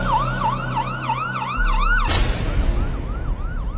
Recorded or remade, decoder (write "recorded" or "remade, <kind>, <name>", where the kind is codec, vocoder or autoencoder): recorded